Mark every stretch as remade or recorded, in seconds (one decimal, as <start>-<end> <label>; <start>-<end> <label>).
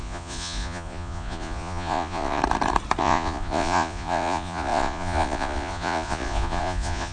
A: 0.0-2.4 remade; 2.4-3.0 recorded; 3.0-7.1 remade